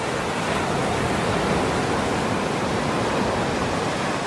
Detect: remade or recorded recorded